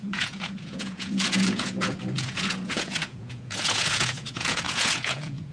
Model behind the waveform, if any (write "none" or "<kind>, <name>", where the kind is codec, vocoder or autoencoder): vocoder, Vocos